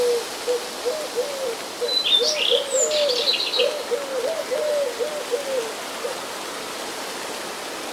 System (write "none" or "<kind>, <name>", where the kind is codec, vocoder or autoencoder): none